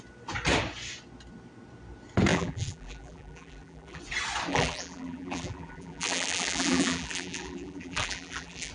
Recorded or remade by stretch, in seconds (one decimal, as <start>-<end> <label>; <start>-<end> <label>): 0.0-2.3 recorded; 2.3-4.0 remade; 4.0-4.5 recorded; 4.5-8.7 remade